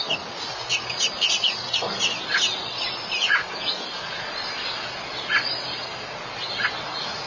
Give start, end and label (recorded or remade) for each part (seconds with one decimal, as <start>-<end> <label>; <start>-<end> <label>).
0.0-7.3 recorded